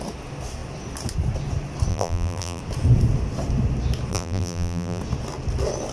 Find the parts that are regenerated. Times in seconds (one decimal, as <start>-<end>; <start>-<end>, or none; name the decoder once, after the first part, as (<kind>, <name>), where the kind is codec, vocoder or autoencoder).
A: 1.9-2.6 (vocoder, BigVGAN v2); 4.1-5.0